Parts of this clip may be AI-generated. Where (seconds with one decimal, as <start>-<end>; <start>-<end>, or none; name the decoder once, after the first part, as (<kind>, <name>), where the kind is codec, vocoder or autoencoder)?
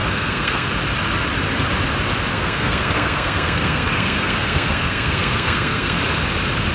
0.0-0.7 (codec, SNAC); 2.3-6.0